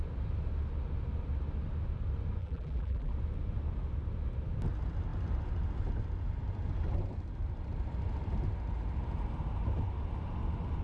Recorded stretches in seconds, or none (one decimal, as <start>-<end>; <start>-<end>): 0.0-2.4; 3.1-10.8